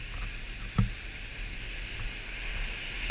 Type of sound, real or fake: real